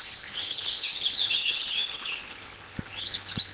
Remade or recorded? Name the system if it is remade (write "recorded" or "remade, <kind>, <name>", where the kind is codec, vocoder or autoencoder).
remade, codec, HILCodec